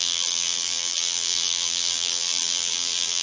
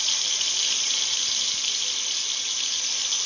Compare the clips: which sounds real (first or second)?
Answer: second